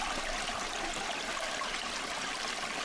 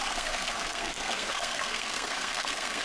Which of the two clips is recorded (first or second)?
first